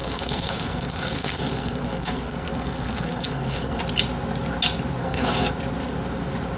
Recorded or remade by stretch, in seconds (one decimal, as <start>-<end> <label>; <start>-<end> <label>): 0.0-3.8 remade; 3.8-5.0 recorded; 5.0-5.5 remade; 5.5-6.6 recorded